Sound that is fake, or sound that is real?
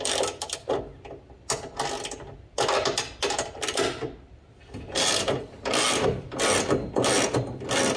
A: real